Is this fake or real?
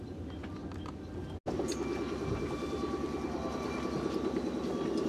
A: real